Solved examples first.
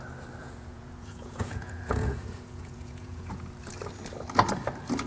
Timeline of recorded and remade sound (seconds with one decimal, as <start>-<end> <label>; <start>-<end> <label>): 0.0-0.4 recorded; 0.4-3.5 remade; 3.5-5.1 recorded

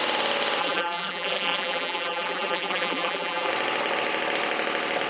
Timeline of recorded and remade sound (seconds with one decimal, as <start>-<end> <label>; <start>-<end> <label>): 0.0-0.6 recorded; 0.6-3.5 remade; 3.5-5.1 recorded

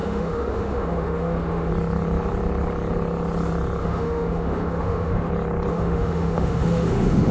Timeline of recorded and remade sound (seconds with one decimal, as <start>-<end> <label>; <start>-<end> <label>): 0.0-1.7 remade; 1.7-3.8 recorded; 3.8-5.3 remade; 5.3-5.7 recorded; 5.7-7.3 remade